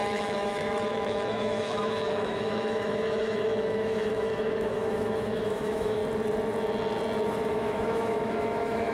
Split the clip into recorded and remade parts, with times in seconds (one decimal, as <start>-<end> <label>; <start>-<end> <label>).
0.0-6.0 remade; 6.0-7.5 recorded; 7.5-8.9 remade

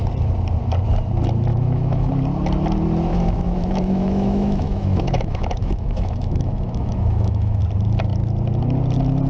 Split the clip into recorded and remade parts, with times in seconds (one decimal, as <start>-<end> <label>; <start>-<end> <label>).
0.0-1.5 recorded; 1.5-2.1 remade; 2.1-3.1 recorded; 3.1-7.6 remade; 7.6-9.3 recorded

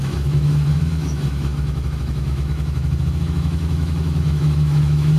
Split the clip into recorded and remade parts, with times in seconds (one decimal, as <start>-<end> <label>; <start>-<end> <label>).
0.0-5.2 remade

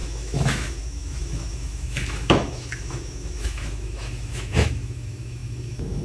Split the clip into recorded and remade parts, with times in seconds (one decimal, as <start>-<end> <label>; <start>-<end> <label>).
0.0-6.0 remade